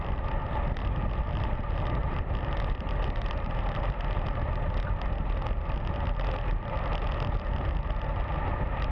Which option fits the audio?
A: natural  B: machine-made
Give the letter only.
A